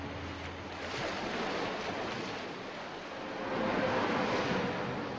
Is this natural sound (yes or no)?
yes